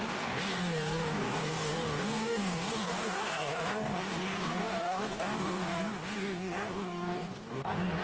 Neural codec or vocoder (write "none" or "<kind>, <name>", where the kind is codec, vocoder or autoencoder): codec, DAC